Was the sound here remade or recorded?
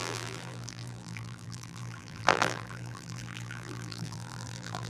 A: remade